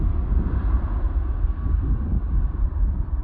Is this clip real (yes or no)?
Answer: yes